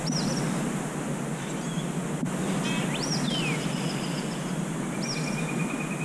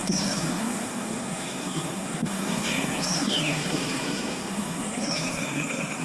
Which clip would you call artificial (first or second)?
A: second